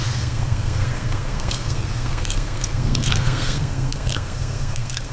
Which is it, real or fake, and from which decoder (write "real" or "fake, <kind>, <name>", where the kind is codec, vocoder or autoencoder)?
fake, codec, SNAC